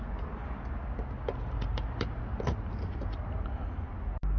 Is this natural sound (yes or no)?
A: yes